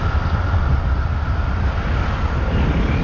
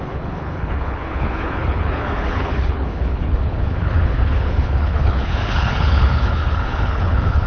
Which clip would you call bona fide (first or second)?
first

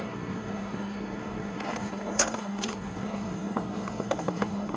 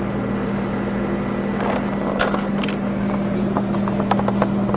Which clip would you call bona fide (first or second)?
second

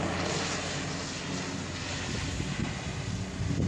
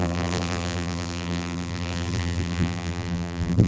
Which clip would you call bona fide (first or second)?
first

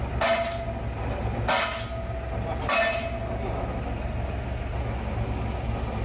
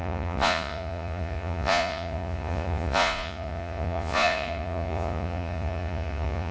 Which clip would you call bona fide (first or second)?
first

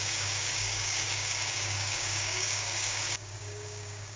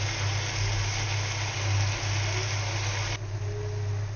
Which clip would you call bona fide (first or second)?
second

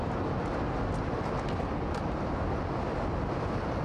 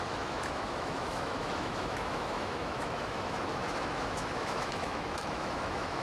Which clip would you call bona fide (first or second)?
first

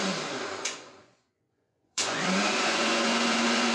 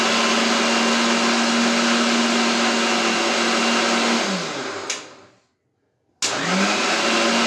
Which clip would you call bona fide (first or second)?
second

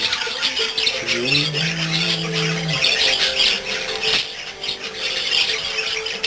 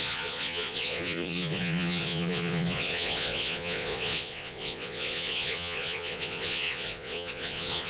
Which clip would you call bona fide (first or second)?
first